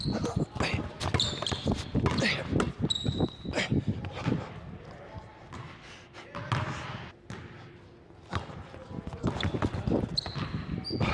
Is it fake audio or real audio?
real